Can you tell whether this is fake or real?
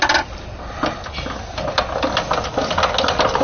real